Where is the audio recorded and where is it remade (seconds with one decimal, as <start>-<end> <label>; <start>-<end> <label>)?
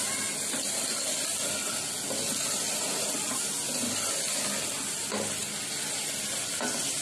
0.0-7.0 recorded